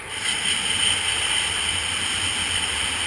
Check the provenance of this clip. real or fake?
real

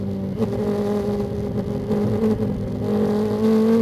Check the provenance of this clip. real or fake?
real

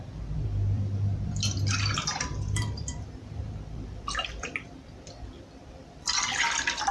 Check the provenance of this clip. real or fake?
fake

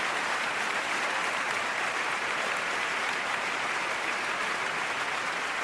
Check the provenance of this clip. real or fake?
fake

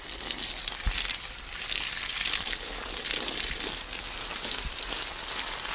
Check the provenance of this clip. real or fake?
real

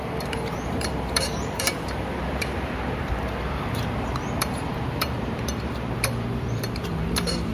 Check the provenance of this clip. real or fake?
fake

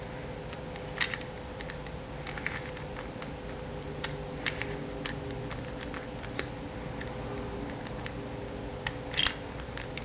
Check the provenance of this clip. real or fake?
real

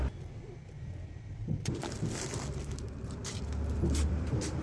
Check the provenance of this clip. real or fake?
fake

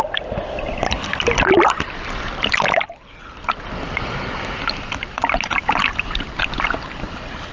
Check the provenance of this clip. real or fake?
fake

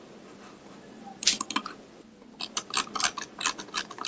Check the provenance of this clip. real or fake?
real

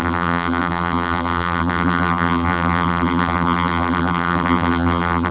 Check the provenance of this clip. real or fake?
fake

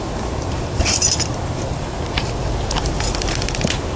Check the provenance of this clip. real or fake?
fake